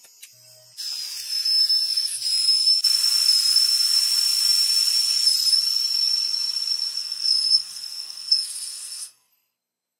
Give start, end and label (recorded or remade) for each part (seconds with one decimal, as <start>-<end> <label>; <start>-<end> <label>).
0.0-7.0 recorded; 7.0-9.3 remade; 9.3-10.0 recorded